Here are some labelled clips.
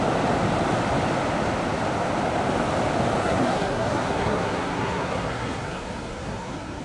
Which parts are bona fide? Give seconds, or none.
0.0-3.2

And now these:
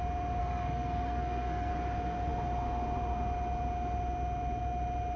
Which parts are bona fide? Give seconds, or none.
0.0-0.4; 1.7-5.2

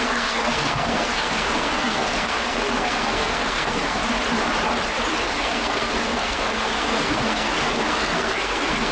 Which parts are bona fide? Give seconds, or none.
4.0-5.2

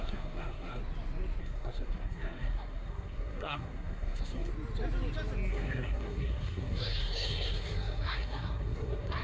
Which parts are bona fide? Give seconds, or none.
0.8-1.4; 4.5-5.5

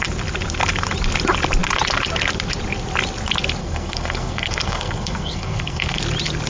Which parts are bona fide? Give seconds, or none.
0.0-3.6; 6.0-6.5

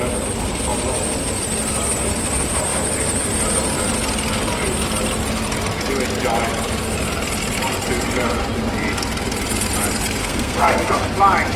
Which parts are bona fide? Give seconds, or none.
0.0-10.2; 11.0-11.6

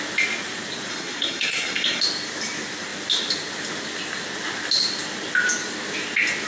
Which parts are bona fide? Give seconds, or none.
0.0-0.9; 2.0-6.5